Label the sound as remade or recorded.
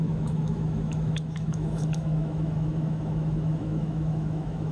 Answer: remade